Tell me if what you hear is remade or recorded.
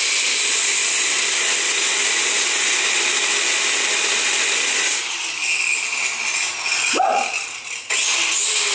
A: recorded